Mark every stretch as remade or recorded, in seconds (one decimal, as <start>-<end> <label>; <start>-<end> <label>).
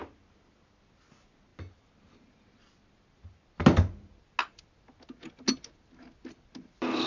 0.0-7.1 recorded